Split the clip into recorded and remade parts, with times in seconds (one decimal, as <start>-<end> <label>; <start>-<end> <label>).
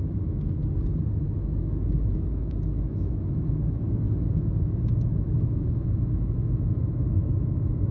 0.0-0.6 remade; 0.6-1.6 recorded; 1.6-7.9 remade